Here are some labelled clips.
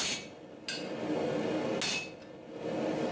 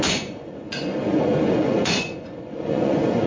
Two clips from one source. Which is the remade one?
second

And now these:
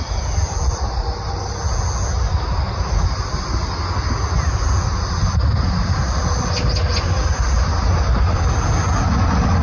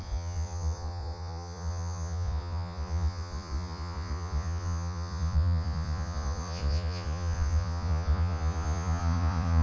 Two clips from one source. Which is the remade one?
second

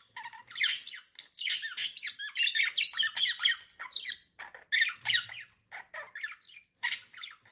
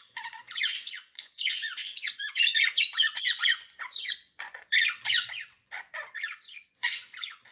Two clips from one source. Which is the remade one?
second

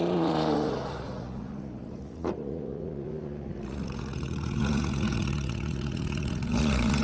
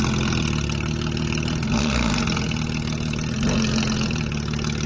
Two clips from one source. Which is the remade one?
first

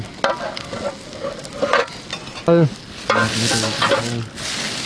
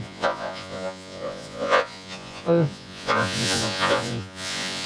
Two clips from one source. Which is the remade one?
second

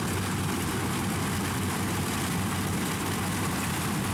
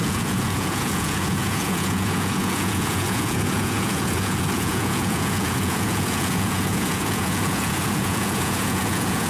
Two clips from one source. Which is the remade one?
second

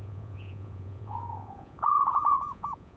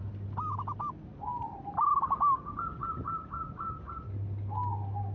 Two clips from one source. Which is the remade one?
first